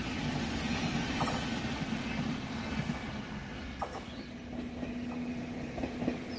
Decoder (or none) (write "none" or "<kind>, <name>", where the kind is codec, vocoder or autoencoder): none